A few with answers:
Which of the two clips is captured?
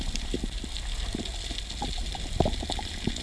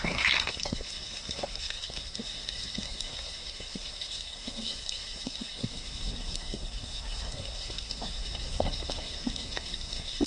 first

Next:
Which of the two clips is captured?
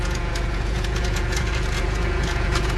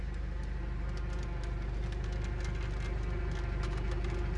second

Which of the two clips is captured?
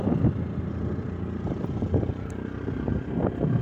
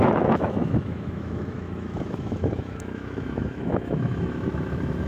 first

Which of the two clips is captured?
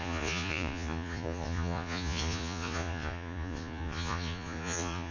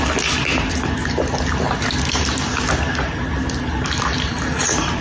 second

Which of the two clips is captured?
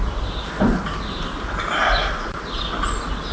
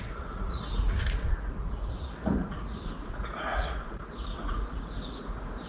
first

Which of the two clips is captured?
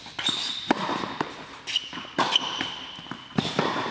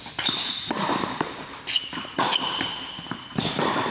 first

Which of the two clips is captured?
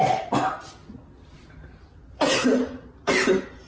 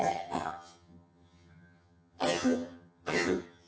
first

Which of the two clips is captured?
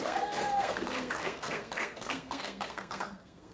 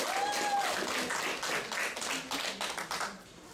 second